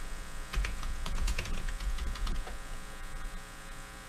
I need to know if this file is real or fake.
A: fake